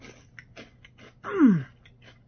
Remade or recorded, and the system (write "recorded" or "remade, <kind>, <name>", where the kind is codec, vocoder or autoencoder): recorded